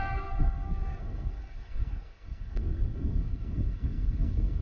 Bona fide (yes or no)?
no